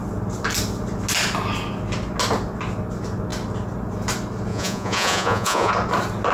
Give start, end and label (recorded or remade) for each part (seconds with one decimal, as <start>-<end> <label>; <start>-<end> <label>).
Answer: 0.0-4.5 recorded; 4.5-5.7 remade; 5.7-6.3 recorded